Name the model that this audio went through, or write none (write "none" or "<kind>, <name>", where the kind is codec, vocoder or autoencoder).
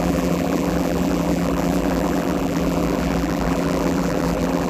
vocoder, BigVGAN v2